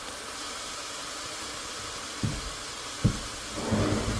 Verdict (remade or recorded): recorded